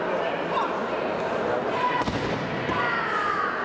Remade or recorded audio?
recorded